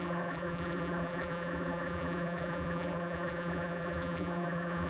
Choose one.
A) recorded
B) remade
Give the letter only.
B